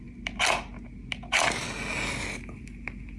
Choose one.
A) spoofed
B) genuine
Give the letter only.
B